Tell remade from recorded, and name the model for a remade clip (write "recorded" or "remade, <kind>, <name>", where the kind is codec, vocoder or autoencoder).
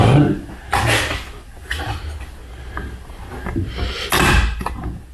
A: recorded